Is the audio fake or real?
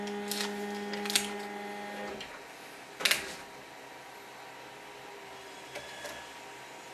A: real